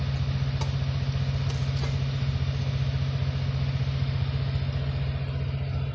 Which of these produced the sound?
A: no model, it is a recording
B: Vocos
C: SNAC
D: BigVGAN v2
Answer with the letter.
A